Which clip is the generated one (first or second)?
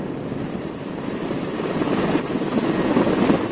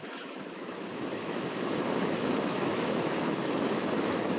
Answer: second